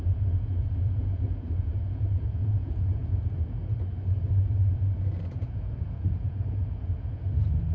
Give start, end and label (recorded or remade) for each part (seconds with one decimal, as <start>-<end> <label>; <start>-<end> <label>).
0.0-3.6 remade; 3.6-5.3 recorded; 5.3-7.7 remade